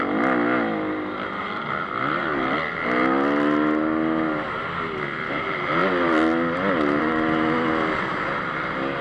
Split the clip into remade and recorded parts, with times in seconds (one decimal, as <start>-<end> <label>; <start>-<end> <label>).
0.0-9.0 recorded